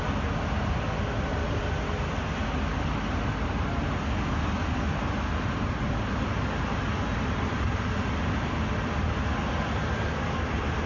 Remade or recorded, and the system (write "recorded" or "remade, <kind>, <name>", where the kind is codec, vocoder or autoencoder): recorded